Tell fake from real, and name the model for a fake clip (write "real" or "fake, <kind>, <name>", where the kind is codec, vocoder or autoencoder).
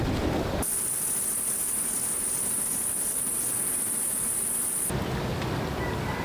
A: real